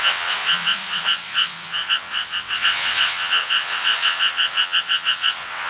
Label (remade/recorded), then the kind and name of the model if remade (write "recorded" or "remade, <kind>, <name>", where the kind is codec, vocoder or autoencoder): remade, vocoder, WaveNeXt